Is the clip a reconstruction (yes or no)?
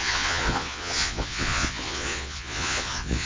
yes